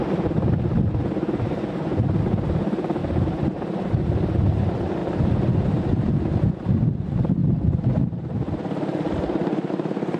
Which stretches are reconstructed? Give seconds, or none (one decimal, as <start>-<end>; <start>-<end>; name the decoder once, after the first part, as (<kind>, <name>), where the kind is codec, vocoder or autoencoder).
3.0-4.0 (vocoder, BigVGAN v2); 7.4-9.7